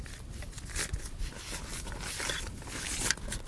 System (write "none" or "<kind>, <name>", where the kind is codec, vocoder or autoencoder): none